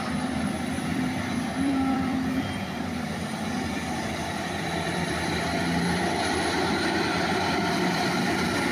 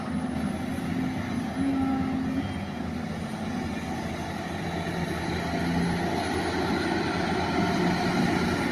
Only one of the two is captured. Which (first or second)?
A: second